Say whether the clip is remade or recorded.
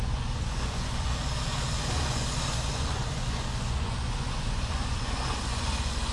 remade